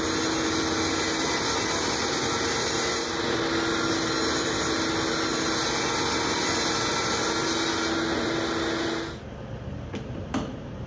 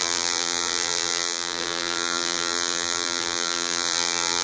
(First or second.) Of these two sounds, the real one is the first